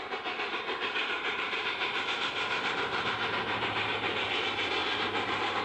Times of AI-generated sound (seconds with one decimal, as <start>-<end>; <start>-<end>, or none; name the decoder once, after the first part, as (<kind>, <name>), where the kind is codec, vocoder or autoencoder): 1.0-4.1 (vocoder, BigVGAN v2); 4.8-5.6